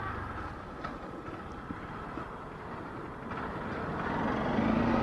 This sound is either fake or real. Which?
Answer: real